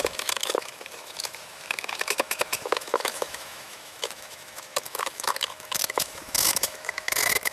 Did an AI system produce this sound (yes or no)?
yes